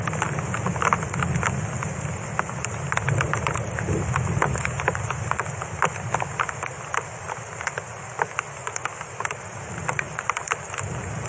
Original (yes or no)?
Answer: yes